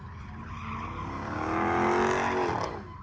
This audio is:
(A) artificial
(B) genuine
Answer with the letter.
B